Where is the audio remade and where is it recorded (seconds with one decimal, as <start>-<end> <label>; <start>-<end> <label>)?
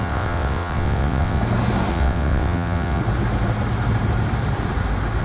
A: 0.0-1.4 remade; 1.4-1.9 recorded; 1.9-3.0 remade; 3.0-5.2 recorded